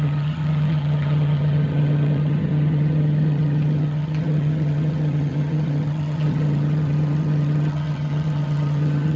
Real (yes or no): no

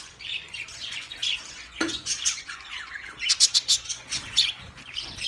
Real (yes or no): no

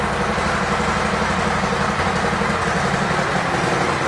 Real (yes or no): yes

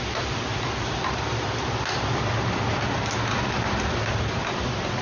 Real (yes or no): yes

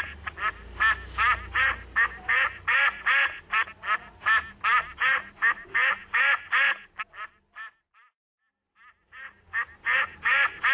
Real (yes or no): yes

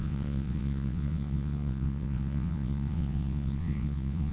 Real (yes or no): no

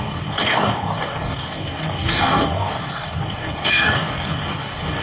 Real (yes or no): no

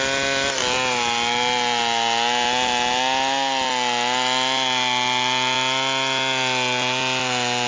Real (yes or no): yes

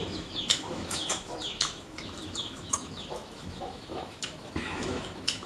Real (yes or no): no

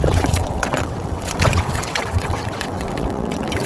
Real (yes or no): no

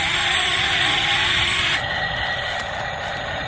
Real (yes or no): yes